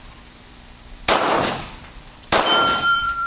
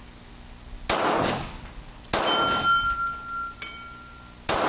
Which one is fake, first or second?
first